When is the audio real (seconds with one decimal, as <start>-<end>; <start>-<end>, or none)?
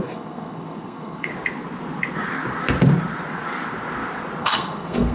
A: 1.3-4.4